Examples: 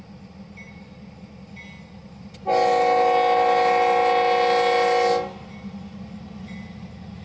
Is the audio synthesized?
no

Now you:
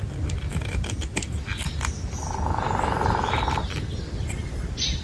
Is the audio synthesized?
no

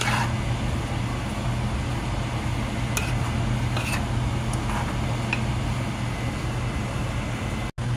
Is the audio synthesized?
no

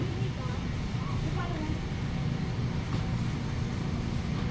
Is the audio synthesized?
no